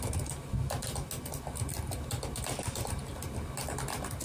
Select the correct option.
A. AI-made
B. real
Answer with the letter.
B